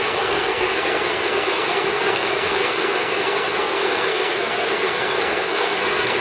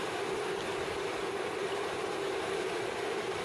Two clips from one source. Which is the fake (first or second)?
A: first